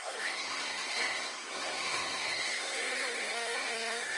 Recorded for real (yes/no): no